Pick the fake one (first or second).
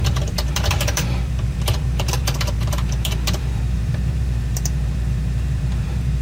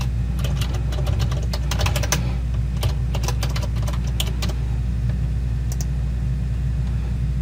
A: first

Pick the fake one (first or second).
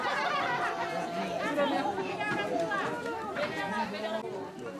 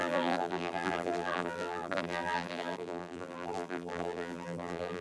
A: second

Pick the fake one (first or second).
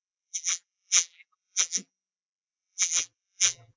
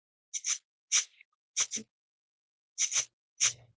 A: first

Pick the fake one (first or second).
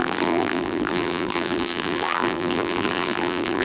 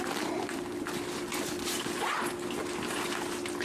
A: first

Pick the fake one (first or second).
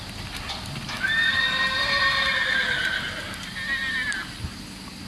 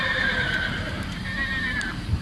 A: second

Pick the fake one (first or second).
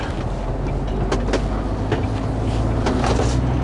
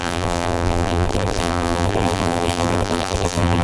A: second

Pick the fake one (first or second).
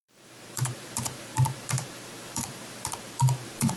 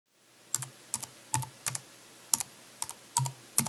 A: first